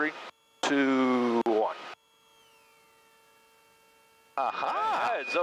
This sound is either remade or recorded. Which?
recorded